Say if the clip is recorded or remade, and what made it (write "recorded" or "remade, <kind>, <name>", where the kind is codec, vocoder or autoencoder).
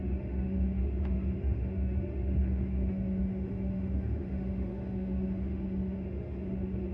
remade, autoencoder, DAC-VAE